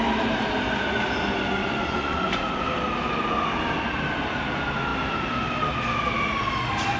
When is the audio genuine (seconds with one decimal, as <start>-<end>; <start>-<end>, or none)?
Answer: 0.0-1.6; 2.6-7.0